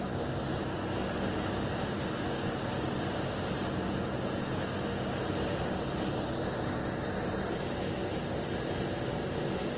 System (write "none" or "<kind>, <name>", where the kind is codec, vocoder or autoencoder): none